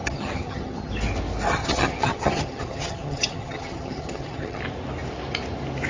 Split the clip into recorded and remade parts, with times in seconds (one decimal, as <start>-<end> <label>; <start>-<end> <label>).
0.0-0.9 remade; 0.9-1.6 recorded; 1.6-4.6 remade; 4.6-5.9 recorded